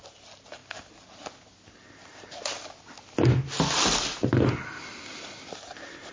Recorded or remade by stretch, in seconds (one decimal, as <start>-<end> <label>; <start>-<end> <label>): 0.0-6.1 recorded